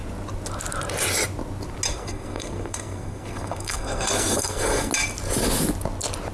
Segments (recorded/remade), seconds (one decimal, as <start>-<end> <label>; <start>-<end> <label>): 0.0-1.9 recorded; 1.9-4.9 remade; 4.9-6.3 recorded

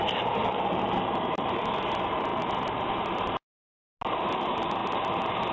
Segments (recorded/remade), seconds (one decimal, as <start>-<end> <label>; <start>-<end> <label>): 0.0-0.4 recorded; 0.4-1.6 remade; 1.6-2.3 recorded; 2.3-3.7 remade; 3.7-4.8 recorded; 4.8-5.5 remade

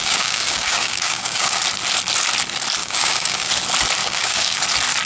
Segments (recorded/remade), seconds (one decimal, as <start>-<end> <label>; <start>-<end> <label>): 0.0-1.6 remade; 1.6-2.8 recorded; 2.8-3.5 remade; 3.5-4.0 recorded; 4.0-4.6 remade; 4.6-5.1 recorded

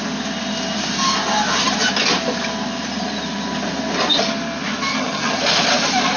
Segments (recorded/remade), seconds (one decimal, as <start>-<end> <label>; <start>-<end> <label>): 0.0-4.9 recorded; 4.9-5.4 remade; 5.4-6.2 recorded

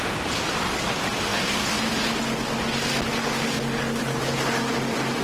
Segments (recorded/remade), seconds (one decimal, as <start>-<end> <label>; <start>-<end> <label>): 0.0-5.2 recorded